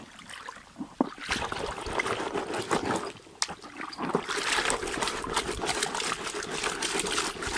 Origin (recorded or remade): recorded